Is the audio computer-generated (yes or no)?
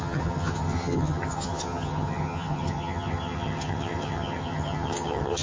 yes